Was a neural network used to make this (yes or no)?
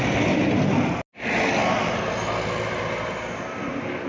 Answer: no